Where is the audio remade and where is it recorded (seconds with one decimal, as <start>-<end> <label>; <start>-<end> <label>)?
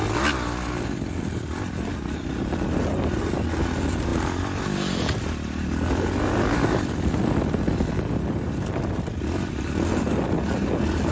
0.0-11.1 recorded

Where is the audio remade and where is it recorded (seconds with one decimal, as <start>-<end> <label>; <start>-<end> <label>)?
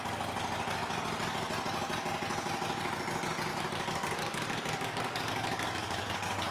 0.0-3.5 recorded; 3.5-6.5 remade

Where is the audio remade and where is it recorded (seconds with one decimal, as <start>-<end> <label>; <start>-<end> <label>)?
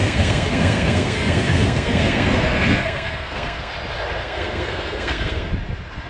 0.0-3.7 remade; 3.7-4.2 recorded; 4.2-5.5 remade; 5.5-6.1 recorded